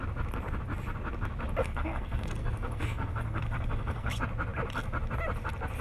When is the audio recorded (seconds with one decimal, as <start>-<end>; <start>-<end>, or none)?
0.0-1.6; 4.1-5.8